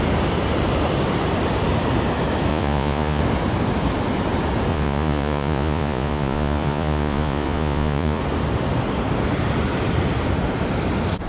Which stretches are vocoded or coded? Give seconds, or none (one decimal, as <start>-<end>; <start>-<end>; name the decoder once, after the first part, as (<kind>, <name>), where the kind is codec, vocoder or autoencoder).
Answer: 2.5-3.2 (vocoder, Vocos); 4.7-8.2